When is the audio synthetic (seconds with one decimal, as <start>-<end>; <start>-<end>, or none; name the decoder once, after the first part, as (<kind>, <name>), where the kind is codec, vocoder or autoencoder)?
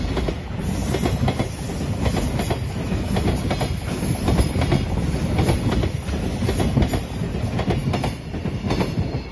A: none